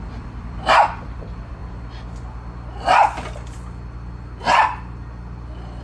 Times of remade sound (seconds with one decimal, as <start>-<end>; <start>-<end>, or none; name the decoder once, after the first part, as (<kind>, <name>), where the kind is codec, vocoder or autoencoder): 0.0-1.6 (vocoder, BigVGAN v2); 4.4-5.8